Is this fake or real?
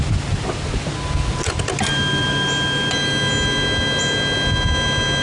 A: real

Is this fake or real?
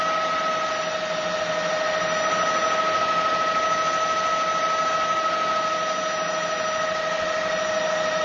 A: real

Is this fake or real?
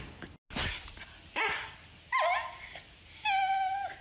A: real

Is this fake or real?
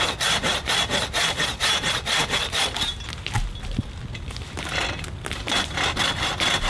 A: real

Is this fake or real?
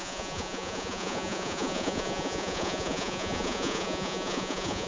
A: fake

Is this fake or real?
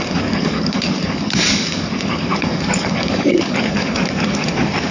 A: fake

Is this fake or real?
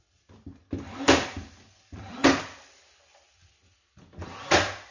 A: real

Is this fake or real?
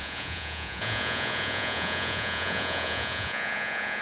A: fake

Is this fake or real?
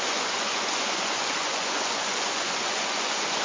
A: fake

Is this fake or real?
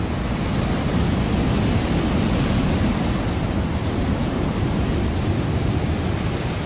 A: real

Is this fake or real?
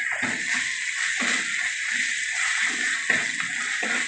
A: real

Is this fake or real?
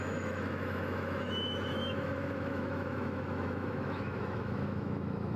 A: fake